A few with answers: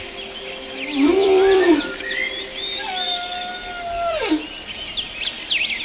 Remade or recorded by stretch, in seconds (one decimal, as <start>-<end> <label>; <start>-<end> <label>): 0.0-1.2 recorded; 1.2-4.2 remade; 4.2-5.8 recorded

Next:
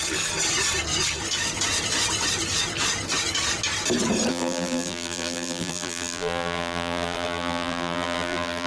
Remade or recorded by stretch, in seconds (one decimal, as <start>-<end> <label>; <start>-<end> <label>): 0.0-4.3 recorded; 4.3-8.7 remade

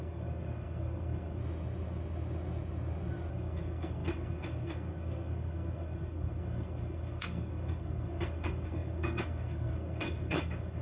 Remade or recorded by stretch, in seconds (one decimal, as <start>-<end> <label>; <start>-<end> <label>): 0.0-1.4 remade; 1.4-3.3 recorded; 3.3-10.8 remade